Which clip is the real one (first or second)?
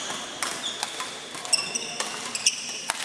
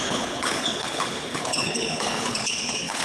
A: first